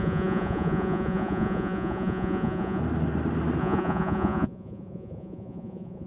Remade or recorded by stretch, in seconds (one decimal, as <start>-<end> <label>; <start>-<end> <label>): 0.0-2.8 remade; 2.8-3.6 recorded; 3.6-6.1 remade